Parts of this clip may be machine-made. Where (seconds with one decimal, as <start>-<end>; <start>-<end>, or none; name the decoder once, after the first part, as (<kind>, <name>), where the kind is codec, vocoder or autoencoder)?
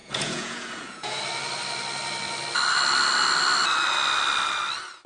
0.0-1.2 (vocoder, Vocos)